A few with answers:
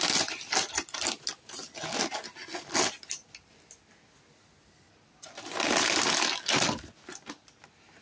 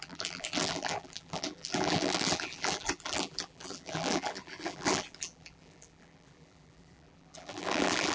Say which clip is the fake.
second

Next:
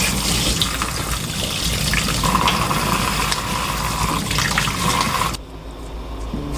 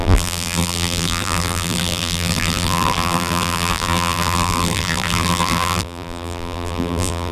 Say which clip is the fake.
second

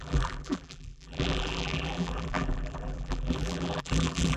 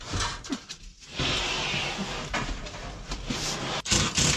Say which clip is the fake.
first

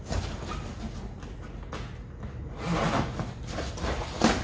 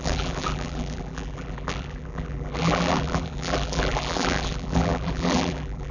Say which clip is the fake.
second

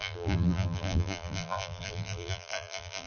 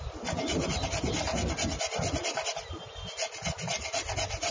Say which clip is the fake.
first